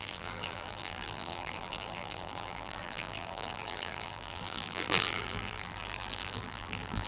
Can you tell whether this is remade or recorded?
remade